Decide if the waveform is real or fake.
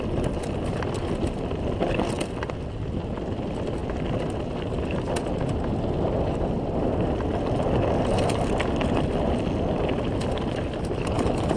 real